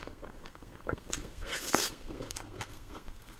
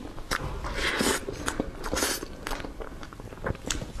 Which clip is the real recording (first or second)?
second